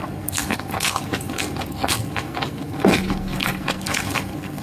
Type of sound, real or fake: fake